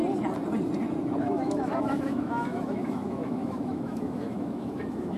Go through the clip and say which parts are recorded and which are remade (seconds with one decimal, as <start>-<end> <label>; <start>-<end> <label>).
0.0-1.2 recorded; 1.2-5.2 remade